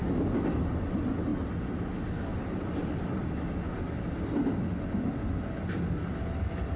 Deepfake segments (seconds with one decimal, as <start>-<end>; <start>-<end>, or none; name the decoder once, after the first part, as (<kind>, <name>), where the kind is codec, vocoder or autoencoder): none